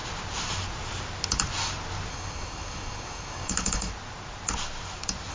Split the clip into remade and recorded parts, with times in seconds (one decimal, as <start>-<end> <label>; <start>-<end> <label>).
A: 0.0-2.1 recorded; 2.1-3.9 remade; 3.9-5.3 recorded